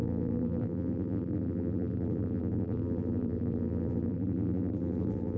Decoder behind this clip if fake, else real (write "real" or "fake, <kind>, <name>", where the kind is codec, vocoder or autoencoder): fake, vocoder, BigVGAN v2